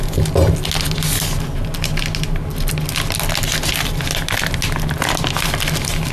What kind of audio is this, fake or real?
real